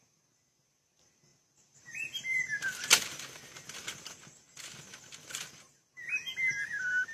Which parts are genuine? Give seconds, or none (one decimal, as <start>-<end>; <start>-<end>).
0.0-7.1